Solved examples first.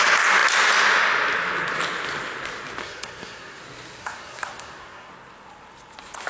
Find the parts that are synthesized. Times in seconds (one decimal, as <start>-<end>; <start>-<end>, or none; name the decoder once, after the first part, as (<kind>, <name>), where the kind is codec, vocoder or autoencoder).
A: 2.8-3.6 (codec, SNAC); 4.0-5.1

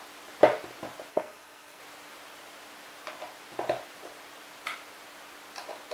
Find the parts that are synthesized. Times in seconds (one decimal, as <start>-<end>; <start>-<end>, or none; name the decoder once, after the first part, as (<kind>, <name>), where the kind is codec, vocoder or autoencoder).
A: 1.1-1.8 (codec, SNAC)

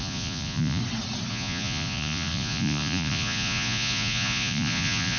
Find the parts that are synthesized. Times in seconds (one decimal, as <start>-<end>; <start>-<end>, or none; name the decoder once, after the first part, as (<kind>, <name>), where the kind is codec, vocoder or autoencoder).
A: 0.0-0.8 (vocoder, Vocos); 1.3-5.2

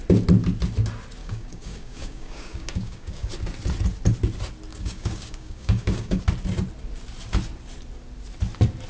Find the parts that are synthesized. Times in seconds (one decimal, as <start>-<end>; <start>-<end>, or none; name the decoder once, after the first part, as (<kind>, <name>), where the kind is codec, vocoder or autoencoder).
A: 1.2-3.3 (codec, DAC); 4.7-6.2

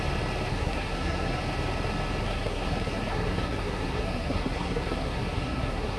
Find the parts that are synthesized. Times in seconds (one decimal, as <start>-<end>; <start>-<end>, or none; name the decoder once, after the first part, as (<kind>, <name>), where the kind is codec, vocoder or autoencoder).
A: 0.5-1.4 (codec, SNAC); 2.2-6.0